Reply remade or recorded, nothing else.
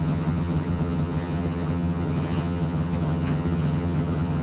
remade